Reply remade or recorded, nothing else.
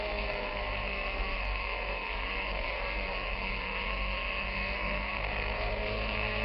remade